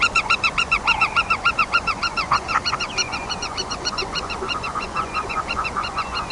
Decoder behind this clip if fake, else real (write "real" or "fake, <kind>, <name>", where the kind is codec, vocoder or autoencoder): fake, vocoder, Vocos